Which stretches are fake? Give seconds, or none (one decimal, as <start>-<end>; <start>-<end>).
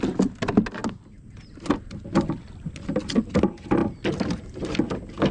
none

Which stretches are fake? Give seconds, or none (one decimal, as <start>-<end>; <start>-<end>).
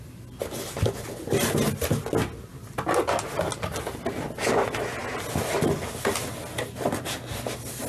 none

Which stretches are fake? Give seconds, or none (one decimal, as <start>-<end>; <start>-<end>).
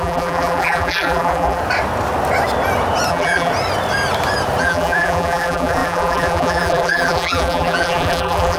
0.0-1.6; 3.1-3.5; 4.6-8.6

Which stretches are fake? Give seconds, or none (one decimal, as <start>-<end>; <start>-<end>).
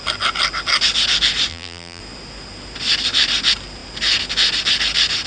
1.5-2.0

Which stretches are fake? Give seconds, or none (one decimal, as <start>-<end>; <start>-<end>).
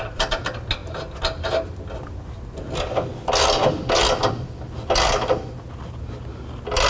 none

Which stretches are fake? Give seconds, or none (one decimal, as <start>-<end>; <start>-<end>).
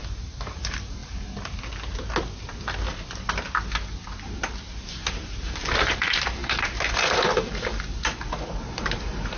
0.0-1.0; 4.9-9.4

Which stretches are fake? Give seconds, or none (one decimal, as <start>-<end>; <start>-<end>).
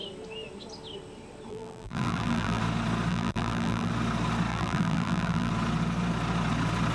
1.5-2.6; 3.1-3.9; 4.5-5.5